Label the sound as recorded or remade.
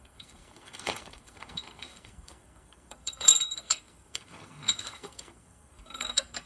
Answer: remade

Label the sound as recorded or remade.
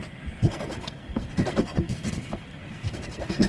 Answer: remade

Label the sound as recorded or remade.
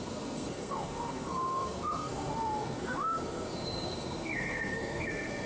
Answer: remade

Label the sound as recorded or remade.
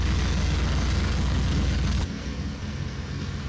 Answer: remade